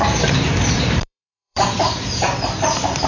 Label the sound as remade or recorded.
remade